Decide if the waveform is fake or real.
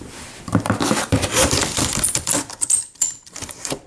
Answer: fake